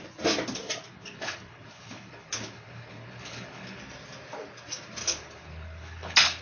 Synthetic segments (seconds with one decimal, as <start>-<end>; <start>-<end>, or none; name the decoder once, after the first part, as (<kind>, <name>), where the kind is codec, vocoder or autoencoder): 0.9-3.8 (codec, HILCodec); 5.0-6.4